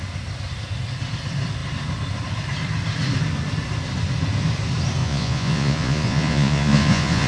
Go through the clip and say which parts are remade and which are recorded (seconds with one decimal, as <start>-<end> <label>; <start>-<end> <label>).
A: 0.0-5.0 recorded; 5.0-7.3 remade